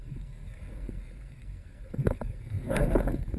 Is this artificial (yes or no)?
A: yes